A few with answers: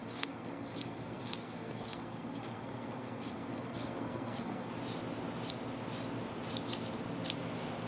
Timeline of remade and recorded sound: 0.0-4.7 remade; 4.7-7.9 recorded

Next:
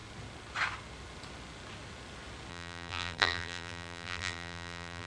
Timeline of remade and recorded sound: 0.0-2.5 recorded; 2.5-5.1 remade